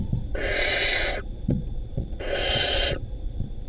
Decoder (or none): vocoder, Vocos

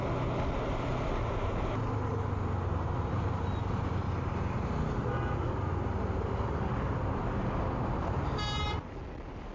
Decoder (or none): none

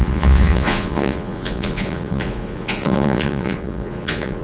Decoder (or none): vocoder, Vocos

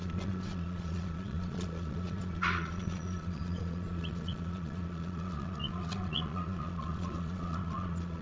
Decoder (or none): vocoder, Vocos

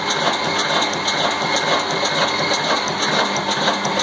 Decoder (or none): none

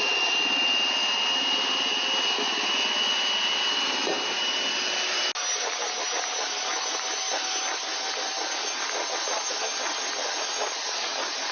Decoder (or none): none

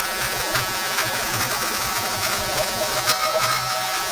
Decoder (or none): vocoder, Vocos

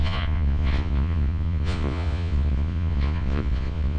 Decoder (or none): vocoder, Vocos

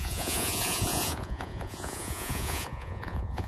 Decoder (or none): vocoder, Vocos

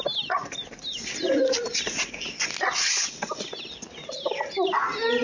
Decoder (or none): none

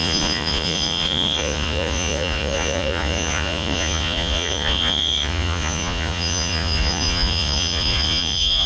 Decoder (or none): vocoder, Vocos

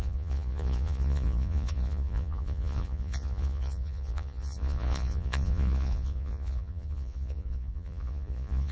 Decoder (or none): vocoder, Vocos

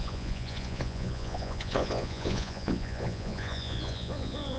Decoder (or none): vocoder, Vocos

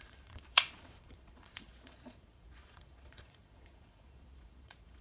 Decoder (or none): vocoder, Vocos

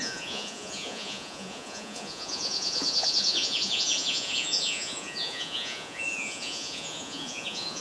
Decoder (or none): vocoder, Vocos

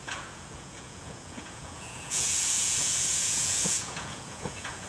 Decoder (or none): vocoder, Vocos